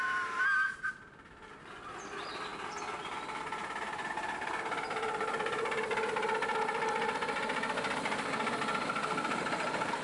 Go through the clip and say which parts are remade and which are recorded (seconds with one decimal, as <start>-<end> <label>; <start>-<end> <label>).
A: 0.0-10.0 recorded